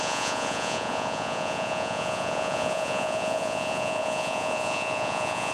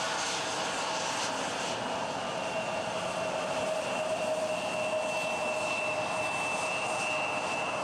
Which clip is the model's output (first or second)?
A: first